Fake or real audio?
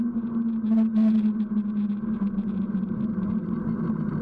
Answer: real